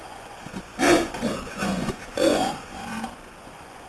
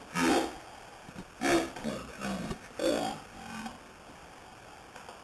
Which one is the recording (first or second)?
second